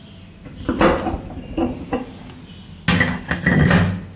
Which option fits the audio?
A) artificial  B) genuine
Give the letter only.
B